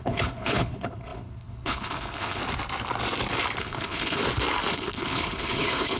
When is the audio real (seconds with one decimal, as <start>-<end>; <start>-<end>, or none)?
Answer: 2.4-3.6; 4.2-4.7